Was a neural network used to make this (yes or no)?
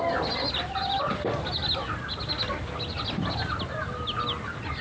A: no